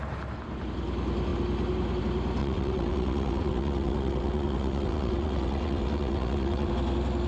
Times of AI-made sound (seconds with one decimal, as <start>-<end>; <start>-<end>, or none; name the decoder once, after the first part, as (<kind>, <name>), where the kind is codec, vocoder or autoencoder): 2.4-6.7 (vocoder, WaveNeXt)